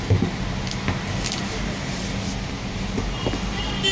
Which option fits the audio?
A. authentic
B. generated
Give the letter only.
A